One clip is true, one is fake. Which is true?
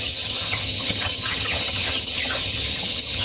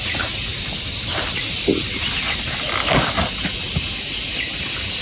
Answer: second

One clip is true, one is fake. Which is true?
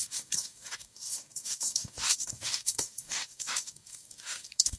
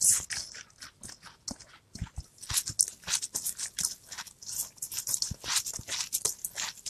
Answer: second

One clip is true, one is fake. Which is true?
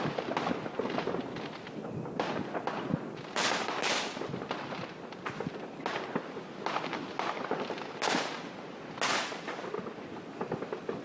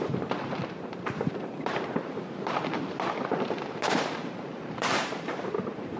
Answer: first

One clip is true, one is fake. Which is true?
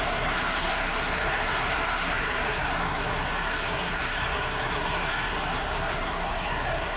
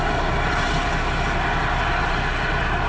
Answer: second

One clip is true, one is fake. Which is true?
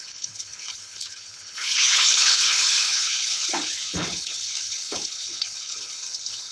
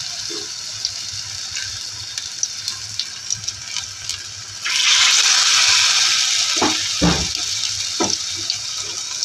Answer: second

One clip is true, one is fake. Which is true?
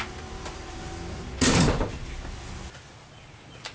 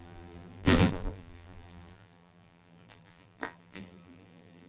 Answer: first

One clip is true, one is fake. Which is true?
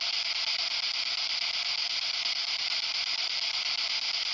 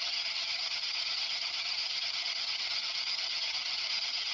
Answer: first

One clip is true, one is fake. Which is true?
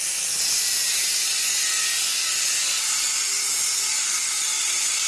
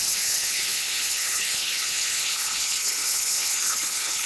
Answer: first